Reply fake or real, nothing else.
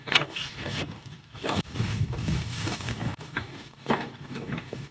fake